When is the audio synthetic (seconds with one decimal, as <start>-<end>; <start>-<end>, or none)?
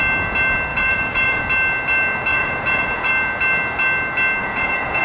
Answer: 0.7-1.4; 2.3-3.1; 4.4-5.0